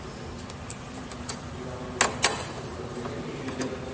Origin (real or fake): real